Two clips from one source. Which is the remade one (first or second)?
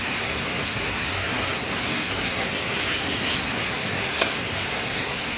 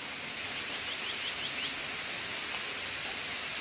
first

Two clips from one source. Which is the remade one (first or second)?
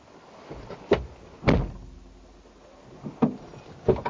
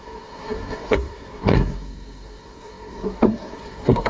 second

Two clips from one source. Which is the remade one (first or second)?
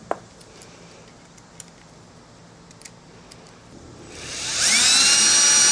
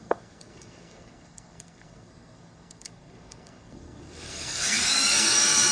second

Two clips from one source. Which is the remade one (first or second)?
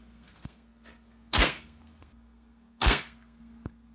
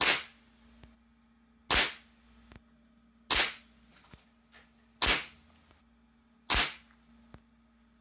first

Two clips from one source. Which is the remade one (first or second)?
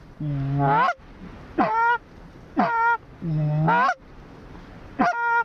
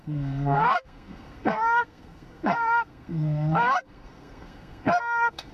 second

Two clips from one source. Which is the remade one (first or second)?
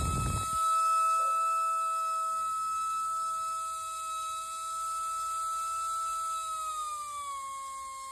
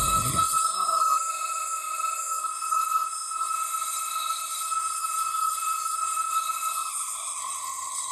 second